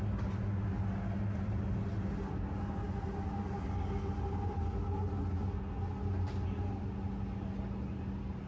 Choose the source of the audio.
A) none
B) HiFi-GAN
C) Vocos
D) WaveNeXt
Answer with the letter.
A